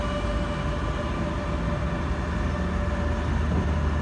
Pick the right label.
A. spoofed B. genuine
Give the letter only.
B